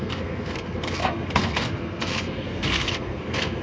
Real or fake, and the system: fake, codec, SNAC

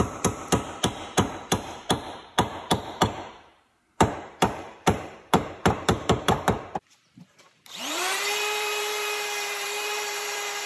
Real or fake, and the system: fake, vocoder, BigVGAN v2